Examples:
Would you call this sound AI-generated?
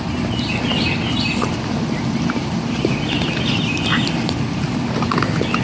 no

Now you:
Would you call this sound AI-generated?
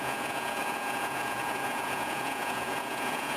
yes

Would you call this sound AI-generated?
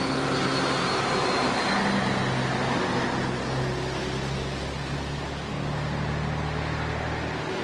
no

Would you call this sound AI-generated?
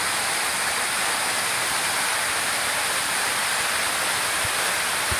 no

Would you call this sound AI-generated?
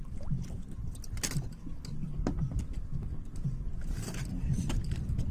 no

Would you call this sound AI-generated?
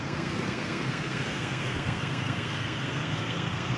yes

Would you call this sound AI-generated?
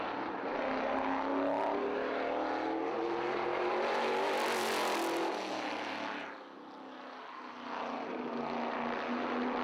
no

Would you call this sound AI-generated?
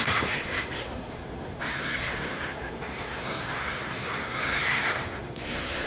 yes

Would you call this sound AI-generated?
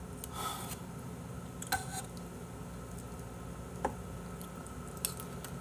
no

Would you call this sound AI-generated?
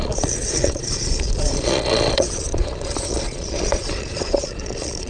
yes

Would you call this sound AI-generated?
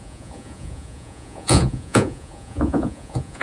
yes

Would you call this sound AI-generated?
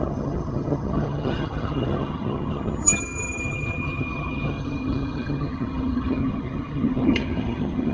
yes